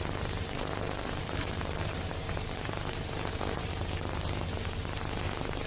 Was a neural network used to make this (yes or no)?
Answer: yes